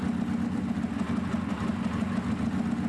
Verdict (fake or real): real